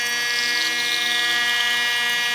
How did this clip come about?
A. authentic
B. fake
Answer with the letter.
A